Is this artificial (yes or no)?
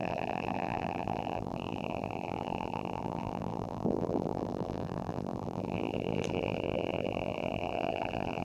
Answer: yes